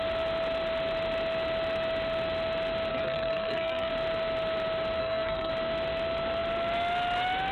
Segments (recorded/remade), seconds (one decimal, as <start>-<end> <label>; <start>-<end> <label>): 0.0-2.9 recorded; 2.9-3.9 remade; 3.9-5.0 recorded; 5.0-5.5 remade; 5.5-7.5 recorded